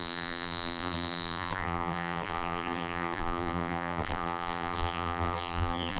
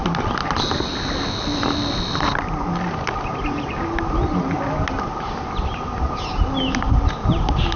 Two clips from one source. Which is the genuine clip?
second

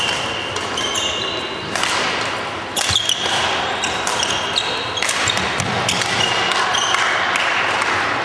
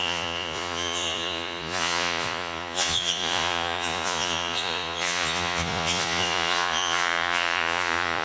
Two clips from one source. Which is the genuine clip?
first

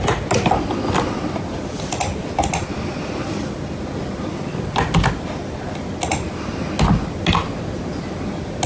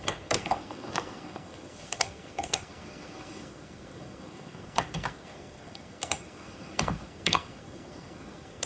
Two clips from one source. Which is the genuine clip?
first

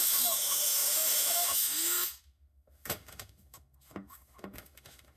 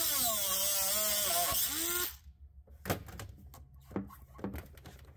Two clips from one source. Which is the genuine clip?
second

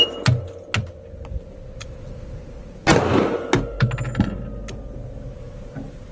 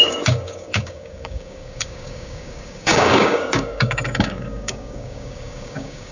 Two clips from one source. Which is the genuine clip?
first